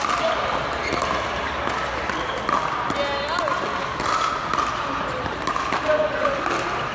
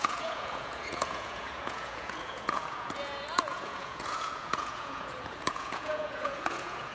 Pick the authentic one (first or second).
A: first